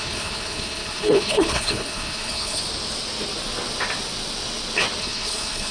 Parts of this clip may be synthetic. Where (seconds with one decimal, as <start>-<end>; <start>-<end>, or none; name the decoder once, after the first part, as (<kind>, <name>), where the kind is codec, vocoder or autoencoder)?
0.0-2.6 (codec, HILCodec); 5.0-5.7